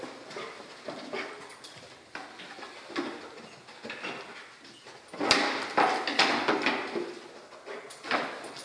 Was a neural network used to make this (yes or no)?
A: no